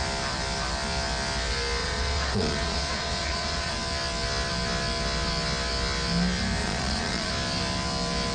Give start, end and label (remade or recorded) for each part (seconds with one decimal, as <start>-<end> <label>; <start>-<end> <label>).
0.0-1.8 recorded; 1.8-3.7 remade; 3.7-6.6 recorded; 6.6-7.3 remade; 7.3-8.3 recorded